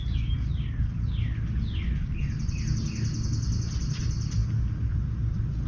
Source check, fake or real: real